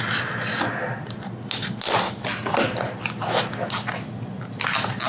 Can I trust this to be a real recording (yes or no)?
yes